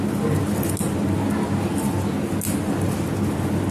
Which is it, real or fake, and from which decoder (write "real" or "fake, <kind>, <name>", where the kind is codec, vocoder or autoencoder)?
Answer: real